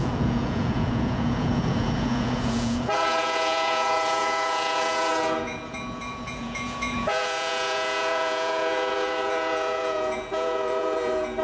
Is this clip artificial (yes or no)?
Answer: yes